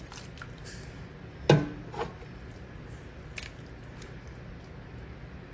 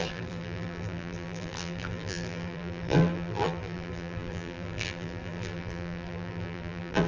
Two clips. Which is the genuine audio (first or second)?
first